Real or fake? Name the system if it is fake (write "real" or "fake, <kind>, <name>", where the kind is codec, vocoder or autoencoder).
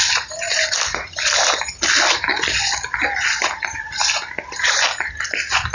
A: real